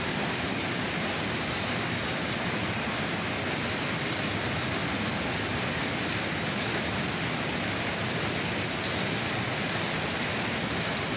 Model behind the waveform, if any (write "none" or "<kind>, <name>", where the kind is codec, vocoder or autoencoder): none